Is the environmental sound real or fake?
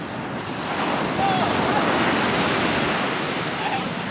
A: real